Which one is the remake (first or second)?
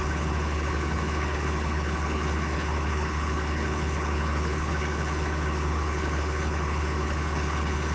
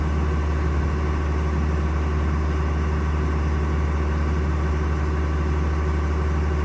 first